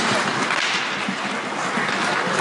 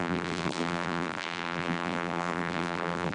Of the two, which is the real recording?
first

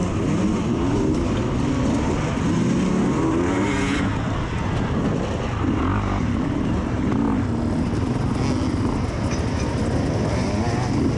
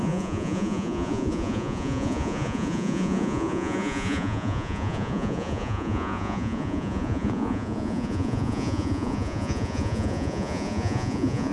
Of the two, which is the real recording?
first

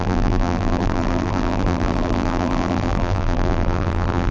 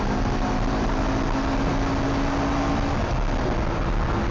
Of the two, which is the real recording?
second